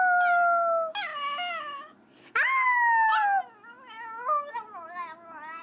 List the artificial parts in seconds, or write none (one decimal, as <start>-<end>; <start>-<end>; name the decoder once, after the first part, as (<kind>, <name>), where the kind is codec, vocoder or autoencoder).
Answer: none